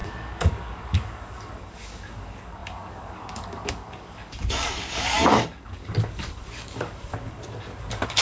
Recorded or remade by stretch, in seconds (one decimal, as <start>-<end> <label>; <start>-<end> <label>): 0.0-8.2 remade